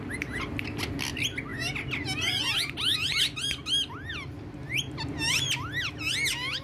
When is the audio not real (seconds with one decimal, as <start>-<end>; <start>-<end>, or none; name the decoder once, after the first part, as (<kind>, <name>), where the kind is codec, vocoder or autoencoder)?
none